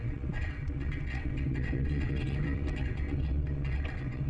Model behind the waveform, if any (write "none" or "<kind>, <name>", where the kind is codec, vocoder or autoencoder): vocoder, WaveNeXt